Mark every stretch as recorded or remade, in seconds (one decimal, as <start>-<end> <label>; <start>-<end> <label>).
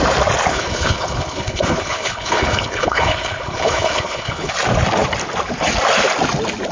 0.0-0.5 recorded; 0.5-4.5 remade; 4.5-6.7 recorded